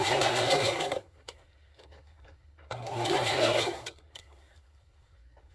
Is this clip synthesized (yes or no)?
yes